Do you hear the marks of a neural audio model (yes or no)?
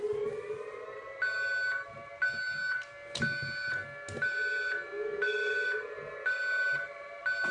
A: no